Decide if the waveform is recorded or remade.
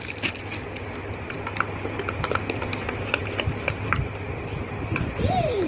recorded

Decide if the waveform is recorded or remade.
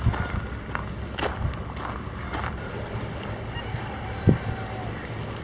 recorded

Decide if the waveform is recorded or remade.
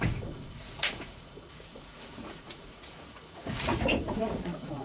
remade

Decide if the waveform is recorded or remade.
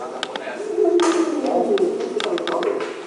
recorded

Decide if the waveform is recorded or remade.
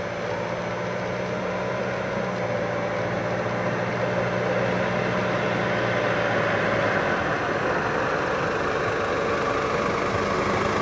recorded